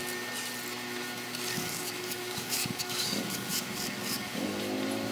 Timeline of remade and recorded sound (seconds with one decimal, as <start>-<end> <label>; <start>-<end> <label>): 0.0-1.5 recorded; 1.5-4.6 remade; 4.6-5.1 recorded